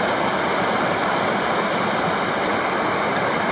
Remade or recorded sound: recorded